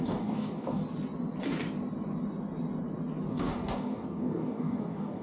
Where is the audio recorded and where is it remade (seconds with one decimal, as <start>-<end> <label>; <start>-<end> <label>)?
0.0-0.8 remade; 0.8-3.3 recorded; 3.3-5.2 remade